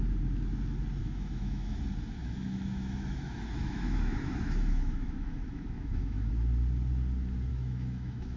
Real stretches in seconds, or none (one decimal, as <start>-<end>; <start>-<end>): 0.0-1.0; 1.8-2.2; 6.3-7.5